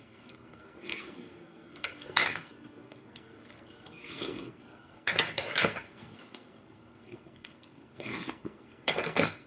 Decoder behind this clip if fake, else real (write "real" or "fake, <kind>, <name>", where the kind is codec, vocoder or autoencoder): fake, codec, SNAC